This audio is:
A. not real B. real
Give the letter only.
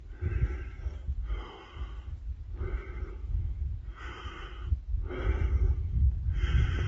B